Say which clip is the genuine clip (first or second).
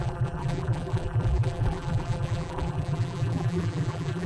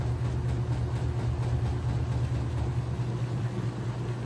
second